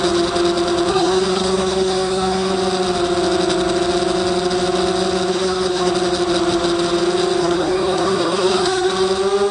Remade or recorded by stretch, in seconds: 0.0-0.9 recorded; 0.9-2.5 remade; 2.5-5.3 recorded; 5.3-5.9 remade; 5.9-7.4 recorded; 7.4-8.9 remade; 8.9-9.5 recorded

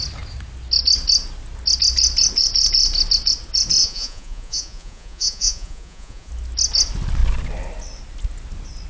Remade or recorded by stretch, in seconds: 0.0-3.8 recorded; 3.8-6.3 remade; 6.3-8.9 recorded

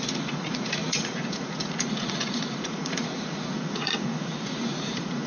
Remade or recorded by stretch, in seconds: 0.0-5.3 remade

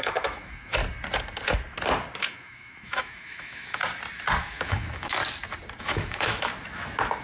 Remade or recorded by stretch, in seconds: 0.0-0.8 remade; 0.8-2.2 recorded; 2.2-3.8 remade; 3.8-4.4 recorded; 4.4-5.2 remade; 5.2-5.8 recorded; 5.8-6.5 remade; 6.5-7.2 recorded

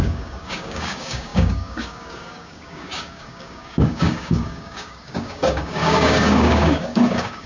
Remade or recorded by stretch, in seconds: 0.0-7.5 remade